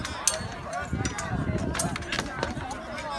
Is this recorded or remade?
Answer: recorded